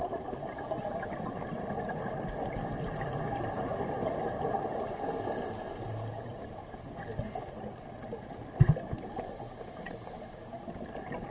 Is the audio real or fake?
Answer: real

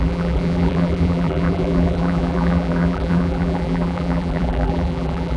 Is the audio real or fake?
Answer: fake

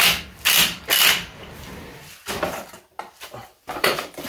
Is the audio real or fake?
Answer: fake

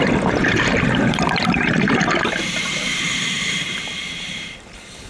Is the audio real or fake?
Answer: fake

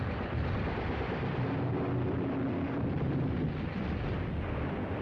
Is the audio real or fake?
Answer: real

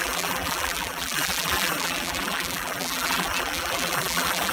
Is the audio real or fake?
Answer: fake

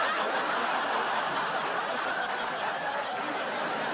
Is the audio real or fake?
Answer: real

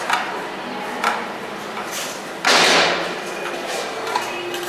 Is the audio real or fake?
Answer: real